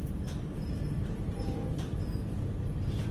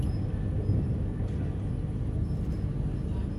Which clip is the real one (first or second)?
second